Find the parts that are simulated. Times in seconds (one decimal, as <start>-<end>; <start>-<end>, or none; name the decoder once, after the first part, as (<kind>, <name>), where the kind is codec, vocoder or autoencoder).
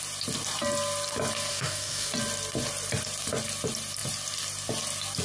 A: 1.5-2.1 (codec, DAC)